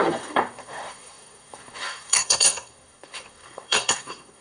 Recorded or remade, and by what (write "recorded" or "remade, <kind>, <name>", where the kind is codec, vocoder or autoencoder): remade, codec, SNAC